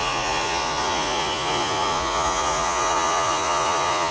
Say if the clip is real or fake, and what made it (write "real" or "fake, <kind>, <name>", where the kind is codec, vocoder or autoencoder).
fake, vocoder, Vocos